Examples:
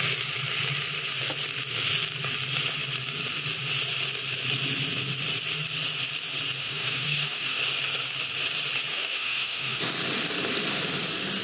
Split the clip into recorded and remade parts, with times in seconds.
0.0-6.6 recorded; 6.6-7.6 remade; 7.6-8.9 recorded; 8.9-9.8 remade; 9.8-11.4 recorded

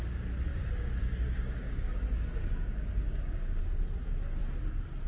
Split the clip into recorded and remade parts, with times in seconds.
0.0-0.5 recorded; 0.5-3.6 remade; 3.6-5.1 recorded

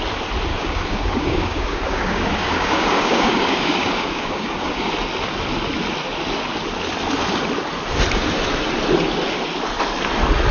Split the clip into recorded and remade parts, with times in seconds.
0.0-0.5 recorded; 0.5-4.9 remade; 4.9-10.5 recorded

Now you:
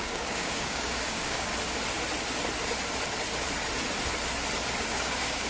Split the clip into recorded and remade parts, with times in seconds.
0.0-1.5 remade; 1.5-4.8 recorded; 4.8-5.5 remade

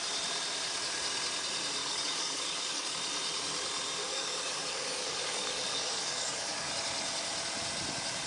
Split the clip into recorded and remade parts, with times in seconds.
0.0-1.8 recorded; 1.8-3.0 remade; 3.0-4.0 recorded; 4.0-6.7 remade; 6.7-8.3 recorded